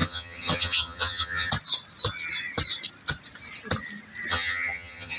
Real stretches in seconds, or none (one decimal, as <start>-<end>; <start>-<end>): 1.5-4.3